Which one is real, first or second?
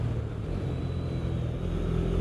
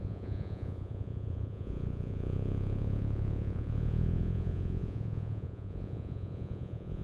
first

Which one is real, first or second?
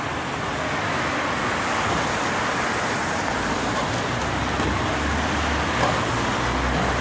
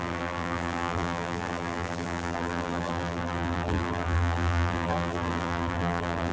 first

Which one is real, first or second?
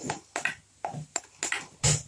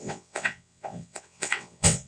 first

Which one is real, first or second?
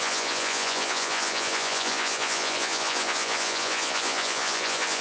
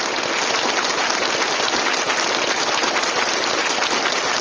second